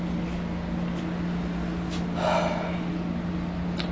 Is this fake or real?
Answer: real